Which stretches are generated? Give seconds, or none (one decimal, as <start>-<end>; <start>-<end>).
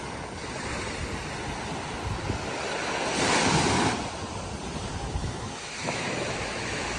5.2-7.0